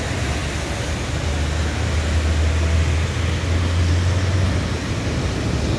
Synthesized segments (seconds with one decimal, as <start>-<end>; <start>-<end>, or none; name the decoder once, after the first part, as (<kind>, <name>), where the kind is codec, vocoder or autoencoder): none